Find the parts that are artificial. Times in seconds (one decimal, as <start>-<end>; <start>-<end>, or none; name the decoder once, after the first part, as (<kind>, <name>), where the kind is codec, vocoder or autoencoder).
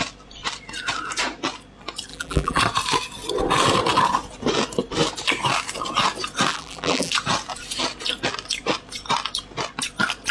2.1-2.6 (vocoder, BigVGAN v2); 6.5-7.1